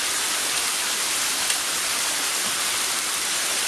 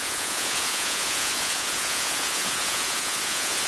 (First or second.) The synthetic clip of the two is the second